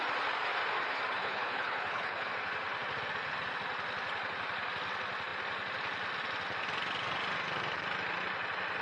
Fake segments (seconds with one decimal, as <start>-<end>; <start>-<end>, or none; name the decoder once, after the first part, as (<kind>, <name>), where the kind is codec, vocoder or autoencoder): 1.2-2.3 (codec, HILCodec)